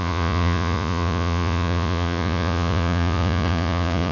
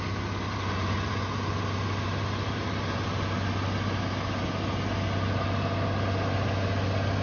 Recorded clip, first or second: second